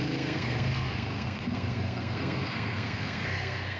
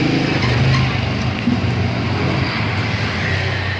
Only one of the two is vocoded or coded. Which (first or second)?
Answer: first